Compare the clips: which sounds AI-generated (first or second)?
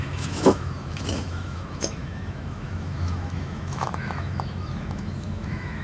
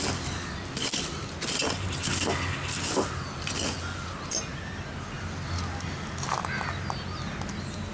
first